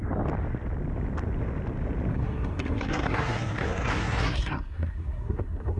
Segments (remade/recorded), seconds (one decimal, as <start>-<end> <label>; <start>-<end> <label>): 0.0-2.1 recorded; 2.1-5.8 remade